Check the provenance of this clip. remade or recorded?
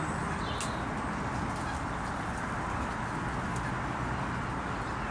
recorded